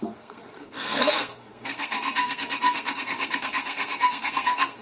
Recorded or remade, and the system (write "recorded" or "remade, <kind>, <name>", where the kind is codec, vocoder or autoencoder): remade, codec, SNAC